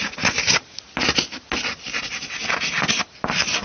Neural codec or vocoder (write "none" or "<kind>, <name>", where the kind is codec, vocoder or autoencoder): none